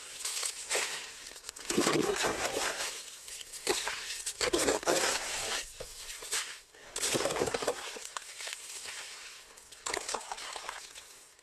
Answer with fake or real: fake